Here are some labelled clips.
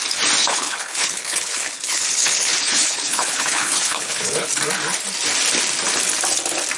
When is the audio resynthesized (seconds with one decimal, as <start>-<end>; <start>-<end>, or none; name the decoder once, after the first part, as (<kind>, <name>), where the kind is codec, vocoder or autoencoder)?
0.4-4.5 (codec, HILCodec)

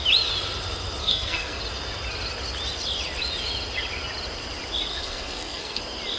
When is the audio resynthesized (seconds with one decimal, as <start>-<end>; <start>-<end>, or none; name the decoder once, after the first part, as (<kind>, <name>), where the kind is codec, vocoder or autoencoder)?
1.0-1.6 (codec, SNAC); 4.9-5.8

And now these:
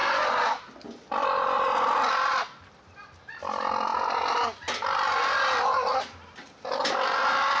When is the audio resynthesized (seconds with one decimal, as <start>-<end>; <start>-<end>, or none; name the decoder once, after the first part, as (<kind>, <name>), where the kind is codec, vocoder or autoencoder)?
none